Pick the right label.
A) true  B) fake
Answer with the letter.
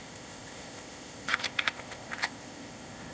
B